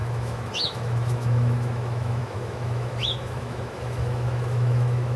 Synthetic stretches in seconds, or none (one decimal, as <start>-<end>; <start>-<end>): 0.0-5.2